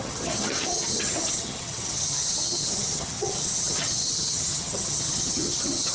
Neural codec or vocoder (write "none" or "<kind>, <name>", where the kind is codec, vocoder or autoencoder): vocoder, HiFi-GAN